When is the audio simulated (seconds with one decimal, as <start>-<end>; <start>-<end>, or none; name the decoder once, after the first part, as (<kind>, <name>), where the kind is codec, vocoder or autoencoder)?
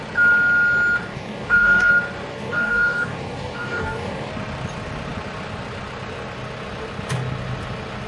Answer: 1.1-1.9 (codec, DAC); 2.3-4.3